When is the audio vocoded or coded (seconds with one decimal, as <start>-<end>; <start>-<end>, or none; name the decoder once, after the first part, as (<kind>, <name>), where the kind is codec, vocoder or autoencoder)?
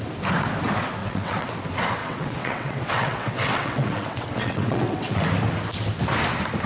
1.0-1.5 (vocoder, WaveNeXt); 2.0-5.2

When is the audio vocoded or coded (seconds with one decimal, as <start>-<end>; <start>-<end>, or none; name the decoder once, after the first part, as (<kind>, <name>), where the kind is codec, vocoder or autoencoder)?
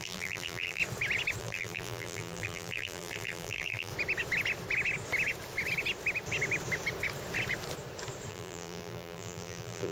0.0-0.8 (vocoder, BigVGAN v2); 1.4-3.9; 8.3-9.9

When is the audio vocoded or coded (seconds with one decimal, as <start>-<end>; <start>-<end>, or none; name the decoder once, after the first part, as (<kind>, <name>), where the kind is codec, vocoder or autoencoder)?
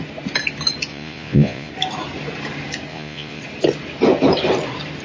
0.9-1.7 (vocoder, Vocos); 2.9-3.4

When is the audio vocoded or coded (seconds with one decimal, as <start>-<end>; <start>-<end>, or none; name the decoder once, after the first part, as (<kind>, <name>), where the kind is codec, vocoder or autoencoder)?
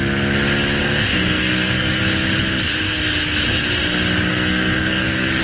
0.8-2.0 (codec, SNAC); 4.3-5.4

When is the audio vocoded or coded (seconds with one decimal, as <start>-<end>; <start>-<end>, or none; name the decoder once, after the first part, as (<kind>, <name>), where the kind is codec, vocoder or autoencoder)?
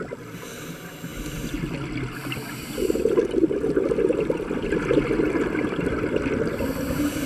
none